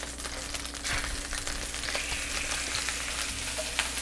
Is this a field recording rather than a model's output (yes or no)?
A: yes